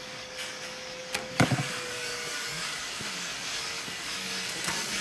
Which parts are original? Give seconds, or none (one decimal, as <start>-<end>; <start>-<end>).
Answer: none